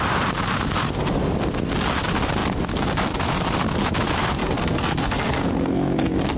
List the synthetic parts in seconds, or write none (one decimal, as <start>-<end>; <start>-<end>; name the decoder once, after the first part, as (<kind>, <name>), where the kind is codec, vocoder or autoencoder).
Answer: 4.4-6.4 (codec, SNAC)